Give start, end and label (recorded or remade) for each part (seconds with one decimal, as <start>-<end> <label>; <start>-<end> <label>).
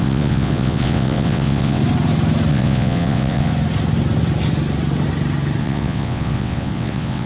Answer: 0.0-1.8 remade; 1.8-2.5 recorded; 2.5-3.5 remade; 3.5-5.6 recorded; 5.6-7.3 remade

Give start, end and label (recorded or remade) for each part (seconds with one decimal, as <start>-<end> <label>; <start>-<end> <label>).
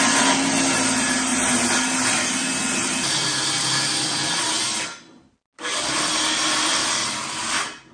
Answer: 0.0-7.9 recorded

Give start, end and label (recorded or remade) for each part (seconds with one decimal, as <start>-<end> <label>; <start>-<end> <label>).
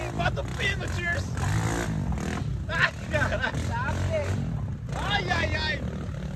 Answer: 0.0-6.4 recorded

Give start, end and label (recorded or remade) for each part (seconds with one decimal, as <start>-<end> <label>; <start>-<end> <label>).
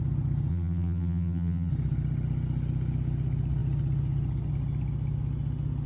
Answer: 0.0-0.5 recorded; 0.5-1.7 remade; 1.7-5.9 recorded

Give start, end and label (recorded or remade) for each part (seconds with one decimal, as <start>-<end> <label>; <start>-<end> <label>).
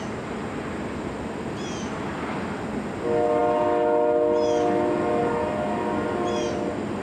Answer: 0.0-7.0 recorded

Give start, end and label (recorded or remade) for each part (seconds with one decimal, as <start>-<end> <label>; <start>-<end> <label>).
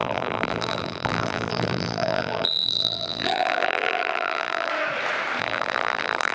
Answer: 0.0-4.7 remade; 4.7-5.4 recorded; 5.4-6.3 remade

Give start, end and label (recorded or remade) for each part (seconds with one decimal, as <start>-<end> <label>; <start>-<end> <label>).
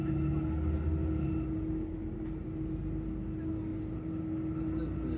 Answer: 0.0-5.2 recorded